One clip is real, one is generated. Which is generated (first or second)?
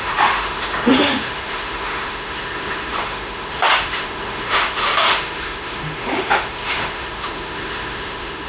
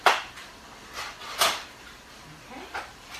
first